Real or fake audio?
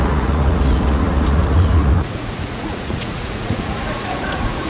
fake